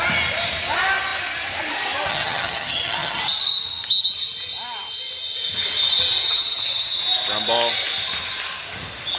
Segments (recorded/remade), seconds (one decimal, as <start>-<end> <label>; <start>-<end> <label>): 0.0-2.1 recorded; 2.1-3.2 remade; 3.2-6.2 recorded; 6.2-7.0 remade; 7.0-9.2 recorded